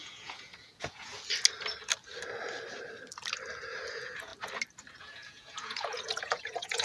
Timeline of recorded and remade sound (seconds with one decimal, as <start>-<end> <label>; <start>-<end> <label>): 0.0-1.1 remade; 1.1-3.9 recorded; 3.9-4.3 remade; 4.3-5.0 recorded; 5.0-6.8 remade